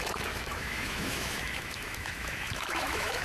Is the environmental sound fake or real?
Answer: fake